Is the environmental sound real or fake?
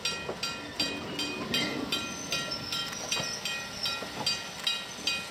real